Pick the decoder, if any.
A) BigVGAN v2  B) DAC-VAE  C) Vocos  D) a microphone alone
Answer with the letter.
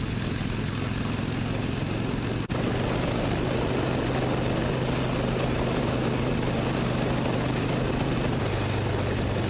D